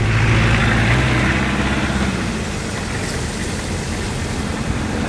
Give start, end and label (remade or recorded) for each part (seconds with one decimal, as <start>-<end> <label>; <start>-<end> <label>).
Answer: 0.0-5.1 recorded